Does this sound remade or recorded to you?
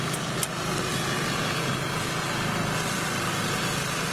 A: recorded